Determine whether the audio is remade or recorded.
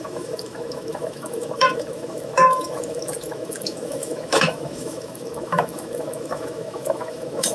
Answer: remade